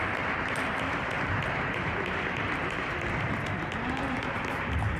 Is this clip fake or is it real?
real